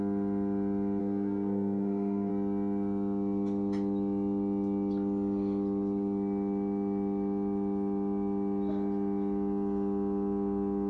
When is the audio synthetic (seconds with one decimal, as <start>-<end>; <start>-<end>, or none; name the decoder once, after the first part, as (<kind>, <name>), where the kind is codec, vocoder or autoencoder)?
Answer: 1.0-2.3 (codec, SNAC)